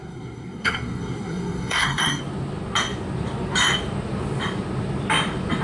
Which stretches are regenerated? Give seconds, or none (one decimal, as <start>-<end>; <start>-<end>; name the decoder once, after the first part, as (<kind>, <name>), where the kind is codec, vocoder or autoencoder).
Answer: 0.0-2.2 (codec, SNAC)

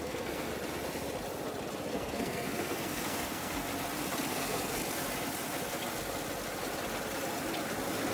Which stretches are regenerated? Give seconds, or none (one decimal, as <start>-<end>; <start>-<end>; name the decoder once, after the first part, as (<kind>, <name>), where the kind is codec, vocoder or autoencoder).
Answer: 0.0-0.5 (codec, SNAC); 1.9-3.6; 4.3-4.8

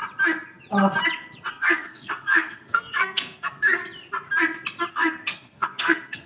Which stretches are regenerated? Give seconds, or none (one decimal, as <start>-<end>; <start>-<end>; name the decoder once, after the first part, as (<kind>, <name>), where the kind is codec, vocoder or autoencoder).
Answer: 1.5-3.8 (codec, SNAC); 4.9-6.3